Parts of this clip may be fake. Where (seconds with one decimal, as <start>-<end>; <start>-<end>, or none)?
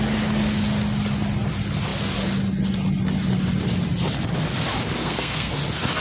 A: 5.0-5.5